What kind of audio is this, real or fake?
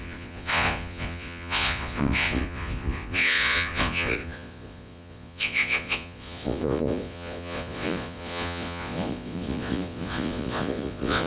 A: fake